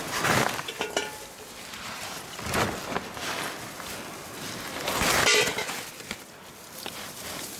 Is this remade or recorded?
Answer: recorded